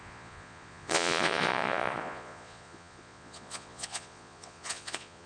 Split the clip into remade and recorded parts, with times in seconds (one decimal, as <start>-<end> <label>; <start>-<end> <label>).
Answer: 0.0-5.3 remade